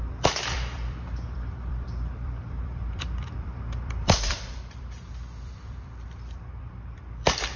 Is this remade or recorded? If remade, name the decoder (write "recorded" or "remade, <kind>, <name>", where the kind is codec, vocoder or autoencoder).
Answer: remade, vocoder, BigVGAN v2